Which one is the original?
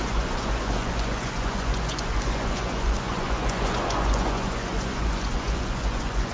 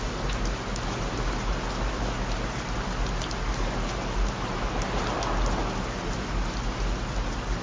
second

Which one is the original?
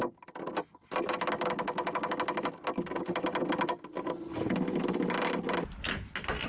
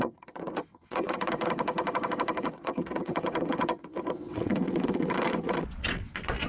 first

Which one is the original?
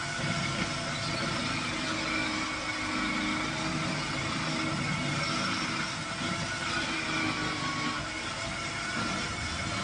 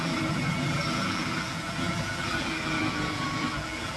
first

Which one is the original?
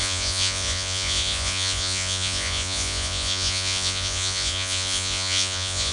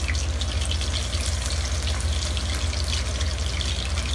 second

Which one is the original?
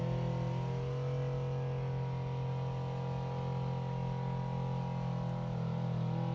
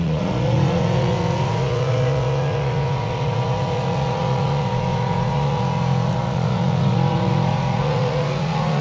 first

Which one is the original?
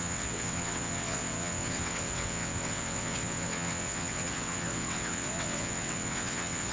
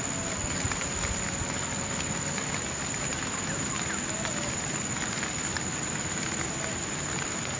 second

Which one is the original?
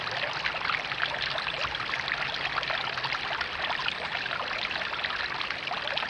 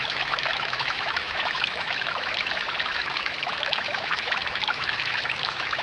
first